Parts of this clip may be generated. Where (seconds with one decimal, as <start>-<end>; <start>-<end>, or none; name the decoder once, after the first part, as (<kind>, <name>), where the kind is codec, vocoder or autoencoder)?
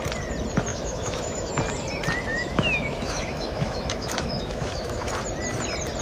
0.7-1.5 (autoencoder, DAC-VAE); 2.3-5.1